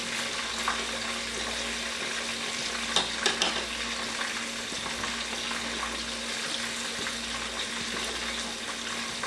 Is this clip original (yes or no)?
yes